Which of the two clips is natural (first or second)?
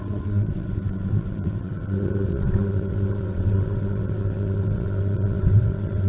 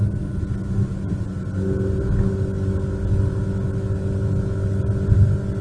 second